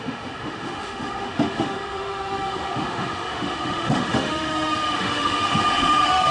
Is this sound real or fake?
fake